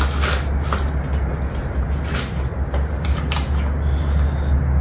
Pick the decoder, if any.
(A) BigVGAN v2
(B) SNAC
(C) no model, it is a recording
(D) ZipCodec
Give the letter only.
C